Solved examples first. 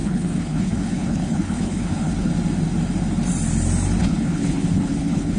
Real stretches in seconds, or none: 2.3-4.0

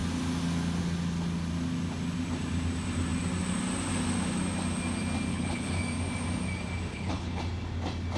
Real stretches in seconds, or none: 0.0-5.3; 5.8-6.9; 7.4-8.2

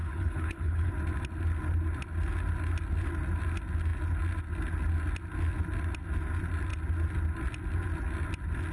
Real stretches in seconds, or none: 0.9-8.7

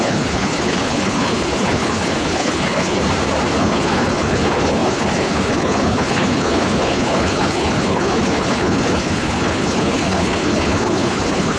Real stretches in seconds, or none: 3.0-3.6

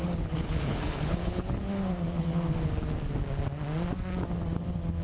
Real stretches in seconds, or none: 2.8-5.0

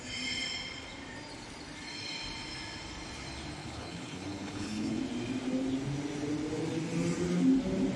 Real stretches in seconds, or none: 0.0-3.6; 5.0-8.0